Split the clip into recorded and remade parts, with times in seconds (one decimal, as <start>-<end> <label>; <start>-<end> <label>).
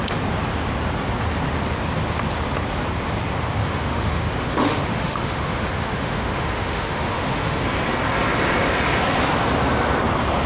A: 0.0-3.6 recorded; 3.6-7.6 remade; 7.6-10.5 recorded